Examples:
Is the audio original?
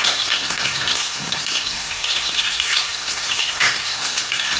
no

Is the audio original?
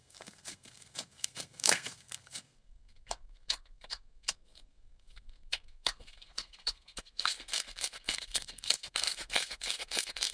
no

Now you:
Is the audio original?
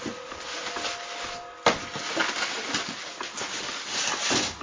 yes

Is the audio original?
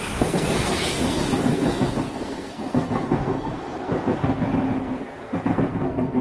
no